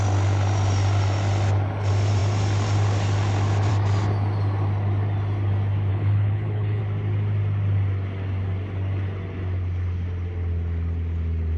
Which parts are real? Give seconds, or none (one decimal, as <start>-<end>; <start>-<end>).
0.0-5.9; 6.8-11.6